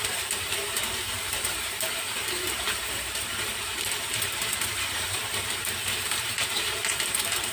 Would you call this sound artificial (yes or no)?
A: yes